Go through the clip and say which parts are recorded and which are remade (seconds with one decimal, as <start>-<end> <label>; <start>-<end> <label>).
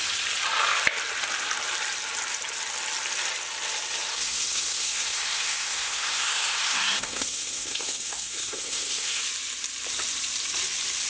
0.0-4.1 recorded; 4.1-9.2 remade; 9.2-11.1 recorded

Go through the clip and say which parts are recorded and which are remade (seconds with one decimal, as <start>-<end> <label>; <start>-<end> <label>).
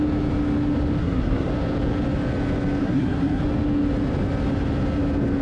0.0-1.0 recorded; 1.0-1.5 remade; 1.5-2.8 recorded; 2.8-3.4 remade; 3.4-5.4 recorded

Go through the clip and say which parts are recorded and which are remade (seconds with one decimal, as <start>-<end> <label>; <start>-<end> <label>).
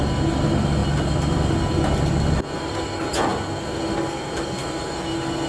0.0-5.5 recorded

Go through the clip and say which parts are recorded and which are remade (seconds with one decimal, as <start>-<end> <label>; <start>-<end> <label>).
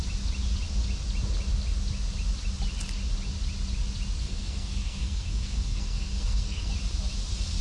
0.0-4.2 recorded; 4.2-6.7 remade; 6.7-7.6 recorded